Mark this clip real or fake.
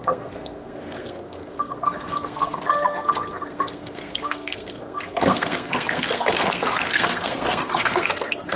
fake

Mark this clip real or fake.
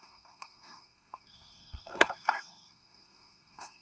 fake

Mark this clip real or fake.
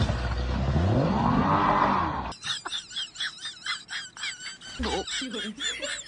real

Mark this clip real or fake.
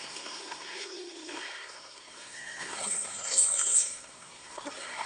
fake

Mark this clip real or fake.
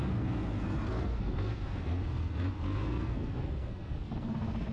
fake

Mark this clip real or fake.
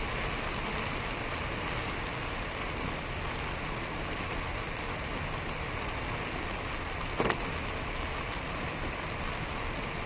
real